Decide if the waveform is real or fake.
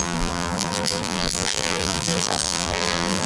fake